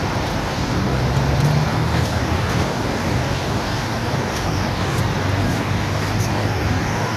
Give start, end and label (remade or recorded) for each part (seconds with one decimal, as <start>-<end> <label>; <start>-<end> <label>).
0.0-0.4 recorded; 0.4-1.0 remade; 1.0-1.7 recorded; 1.7-5.0 remade; 5.0-5.4 recorded; 5.4-7.2 remade